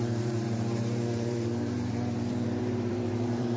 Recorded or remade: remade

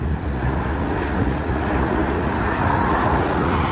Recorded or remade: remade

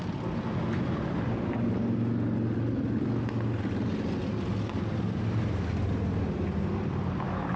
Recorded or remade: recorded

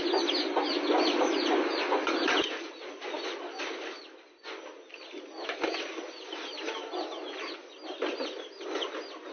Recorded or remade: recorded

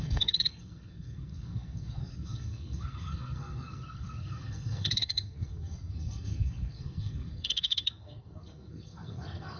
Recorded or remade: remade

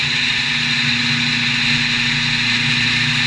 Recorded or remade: recorded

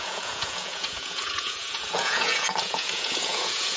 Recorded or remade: remade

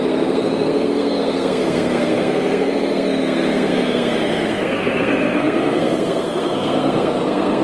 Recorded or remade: remade